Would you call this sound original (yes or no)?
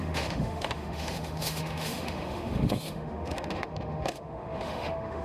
no